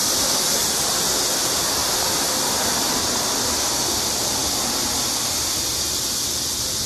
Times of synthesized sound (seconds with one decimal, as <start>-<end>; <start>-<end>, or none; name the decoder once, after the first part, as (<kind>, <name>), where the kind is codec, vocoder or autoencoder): 0.0-1.8 (vocoder, BigVGAN v2); 3.8-5.7